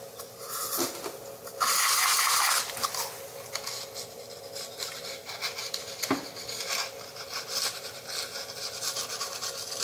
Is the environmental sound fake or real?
real